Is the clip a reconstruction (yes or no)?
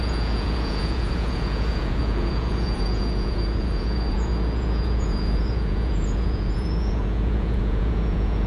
yes